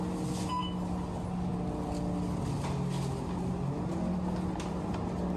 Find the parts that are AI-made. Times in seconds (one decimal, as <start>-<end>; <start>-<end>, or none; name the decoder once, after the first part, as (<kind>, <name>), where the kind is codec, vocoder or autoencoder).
none